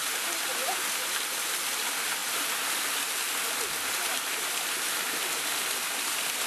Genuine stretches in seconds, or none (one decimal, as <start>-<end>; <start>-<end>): 0.0-6.5